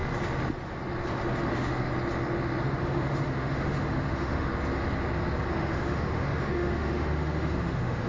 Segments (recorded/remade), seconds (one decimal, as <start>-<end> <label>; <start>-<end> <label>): 0.0-1.5 recorded; 1.5-1.9 remade; 1.9-2.6 recorded; 2.6-4.5 remade; 4.5-5.5 recorded; 5.5-8.1 remade